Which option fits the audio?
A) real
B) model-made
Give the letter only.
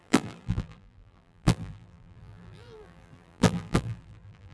B